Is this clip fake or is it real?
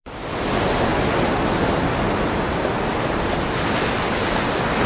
real